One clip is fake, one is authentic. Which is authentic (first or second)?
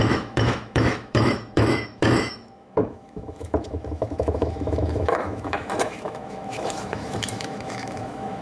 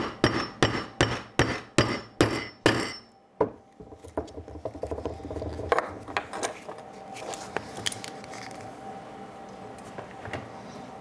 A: second